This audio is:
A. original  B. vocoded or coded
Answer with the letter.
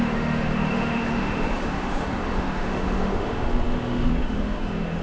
B